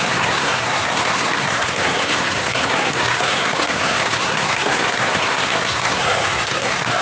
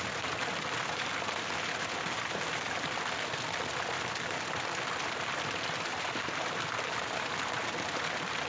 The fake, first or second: first